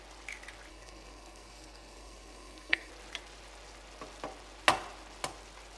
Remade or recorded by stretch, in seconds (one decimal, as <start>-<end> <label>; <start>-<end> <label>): 0.0-0.7 recorded; 0.7-2.9 remade; 2.9-5.8 recorded